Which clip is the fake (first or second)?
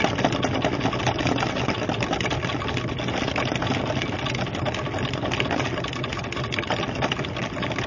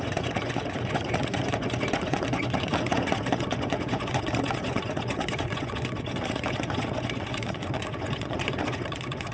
second